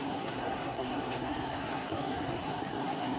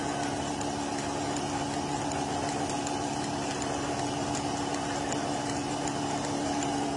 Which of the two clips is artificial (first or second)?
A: first